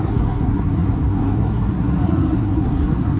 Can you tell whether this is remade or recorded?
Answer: remade